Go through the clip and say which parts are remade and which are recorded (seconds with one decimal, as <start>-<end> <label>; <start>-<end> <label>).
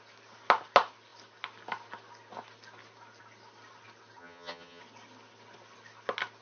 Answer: 0.0-4.2 recorded; 4.2-4.8 remade; 4.8-6.4 recorded